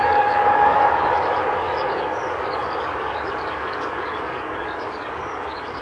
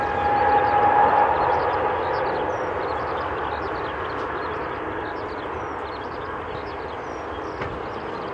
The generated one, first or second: first